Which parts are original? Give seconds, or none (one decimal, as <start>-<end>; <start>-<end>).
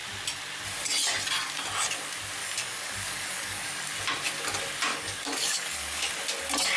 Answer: 0.0-2.4; 3.9-4.9; 6.1-6.8